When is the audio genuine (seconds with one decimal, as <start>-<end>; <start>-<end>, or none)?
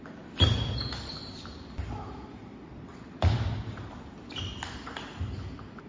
0.0-5.9